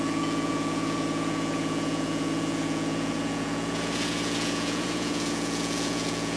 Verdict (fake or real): fake